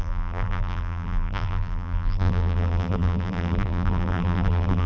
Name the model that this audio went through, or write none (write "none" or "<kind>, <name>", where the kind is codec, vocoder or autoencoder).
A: vocoder, BigVGAN v2